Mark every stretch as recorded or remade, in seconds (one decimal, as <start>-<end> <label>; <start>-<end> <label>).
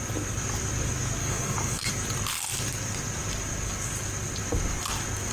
0.0-1.2 recorded; 1.2-1.9 remade; 1.9-5.3 recorded